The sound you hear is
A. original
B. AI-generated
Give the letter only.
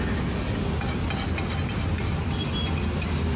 A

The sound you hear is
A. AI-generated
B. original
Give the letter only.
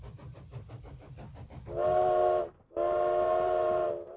B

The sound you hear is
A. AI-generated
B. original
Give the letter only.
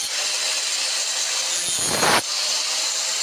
B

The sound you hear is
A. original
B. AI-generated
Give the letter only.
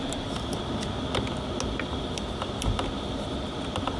A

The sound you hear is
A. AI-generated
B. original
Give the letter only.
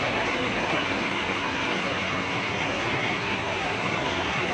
A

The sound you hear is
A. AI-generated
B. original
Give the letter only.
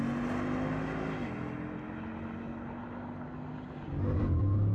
B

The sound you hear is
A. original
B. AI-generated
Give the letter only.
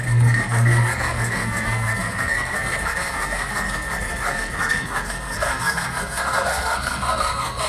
B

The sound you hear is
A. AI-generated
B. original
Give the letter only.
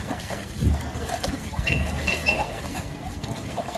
A